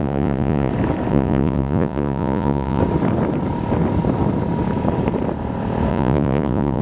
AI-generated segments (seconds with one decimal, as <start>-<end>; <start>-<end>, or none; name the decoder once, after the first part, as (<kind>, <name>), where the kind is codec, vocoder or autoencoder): 0.0-0.7 (vocoder, Vocos); 1.1-2.8; 5.9-6.8